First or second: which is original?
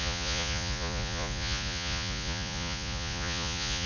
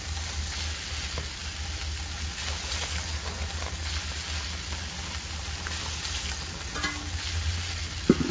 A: second